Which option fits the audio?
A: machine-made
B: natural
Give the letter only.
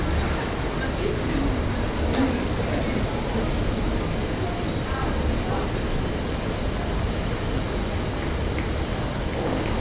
B